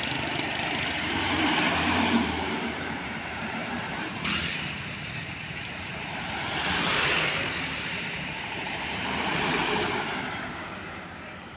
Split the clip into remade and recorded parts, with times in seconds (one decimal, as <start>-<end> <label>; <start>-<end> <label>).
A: 0.0-11.6 remade